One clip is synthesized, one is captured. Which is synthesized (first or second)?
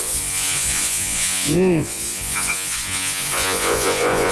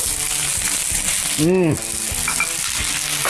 first